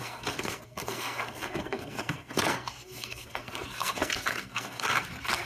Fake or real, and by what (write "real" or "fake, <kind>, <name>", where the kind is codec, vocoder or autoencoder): fake, codec, SNAC